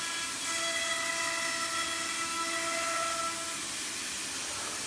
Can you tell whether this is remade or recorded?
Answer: recorded